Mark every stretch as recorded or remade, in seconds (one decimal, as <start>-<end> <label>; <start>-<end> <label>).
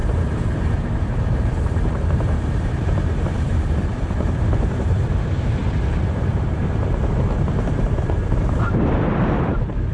0.0-9.9 remade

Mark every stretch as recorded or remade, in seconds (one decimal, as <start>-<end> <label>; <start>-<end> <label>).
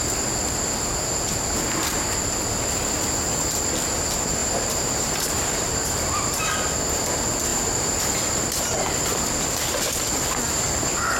0.0-4.4 recorded; 4.4-6.4 remade; 6.4-7.5 recorded; 7.5-8.7 remade; 8.7-11.2 recorded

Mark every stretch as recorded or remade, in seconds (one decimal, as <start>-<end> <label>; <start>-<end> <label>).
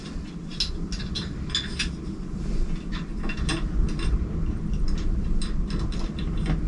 0.0-6.7 recorded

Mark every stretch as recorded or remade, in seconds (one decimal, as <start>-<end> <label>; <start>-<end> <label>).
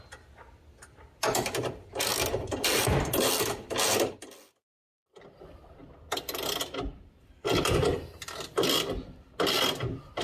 0.0-2.1 recorded; 2.1-3.8 remade; 3.8-10.2 recorded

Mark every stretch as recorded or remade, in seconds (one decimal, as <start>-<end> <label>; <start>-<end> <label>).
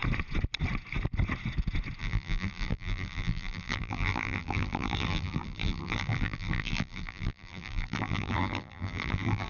0.0-2.0 recorded; 2.0-9.5 remade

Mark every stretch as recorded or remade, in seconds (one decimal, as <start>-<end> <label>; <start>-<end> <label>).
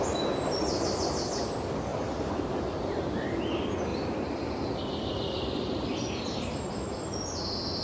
0.0-1.9 recorded; 1.9-2.5 remade; 2.5-3.9 recorded; 3.9-4.5 remade; 4.5-7.8 recorded